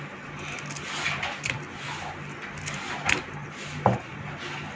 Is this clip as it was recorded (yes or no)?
yes